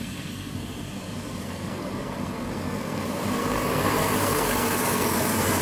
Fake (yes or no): yes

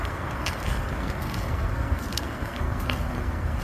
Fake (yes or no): yes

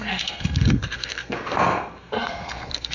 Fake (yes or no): yes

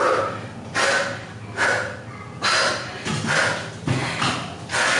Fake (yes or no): no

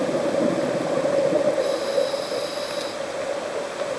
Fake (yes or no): no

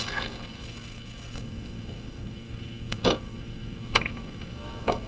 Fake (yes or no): yes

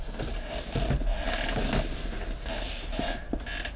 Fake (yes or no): no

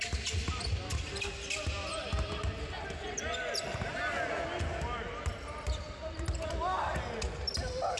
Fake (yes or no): no